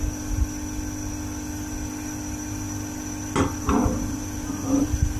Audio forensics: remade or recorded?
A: recorded